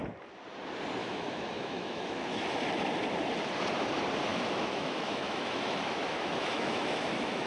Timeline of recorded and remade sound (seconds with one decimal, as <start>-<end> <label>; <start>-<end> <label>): 0.0-1.0 recorded; 1.0-2.5 remade; 2.5-4.3 recorded; 4.3-7.5 remade